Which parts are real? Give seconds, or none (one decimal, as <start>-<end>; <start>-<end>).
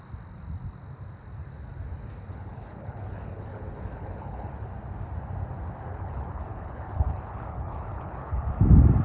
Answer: 0.0-2.3; 4.5-5.8; 8.5-9.0